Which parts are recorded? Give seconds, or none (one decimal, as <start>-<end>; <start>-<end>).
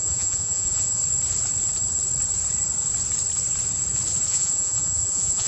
1.0-4.3